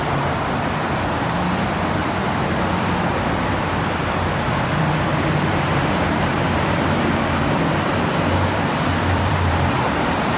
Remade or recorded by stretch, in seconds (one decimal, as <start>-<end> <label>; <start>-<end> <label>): 0.0-10.4 remade